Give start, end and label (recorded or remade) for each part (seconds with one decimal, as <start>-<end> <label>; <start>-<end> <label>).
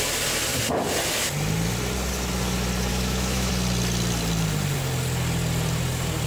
0.0-2.9 recorded; 2.9-3.5 remade; 3.5-6.3 recorded